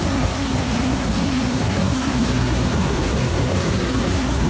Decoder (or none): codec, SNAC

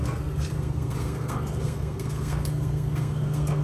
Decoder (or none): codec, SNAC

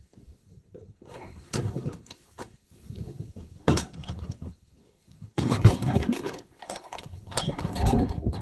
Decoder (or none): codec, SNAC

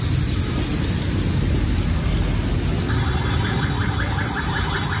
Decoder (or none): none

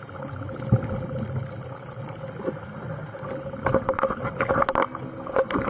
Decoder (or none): none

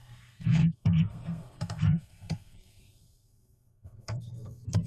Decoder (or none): codec, SNAC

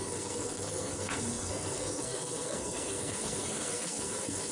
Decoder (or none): codec, SNAC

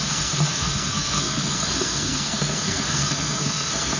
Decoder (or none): codec, SNAC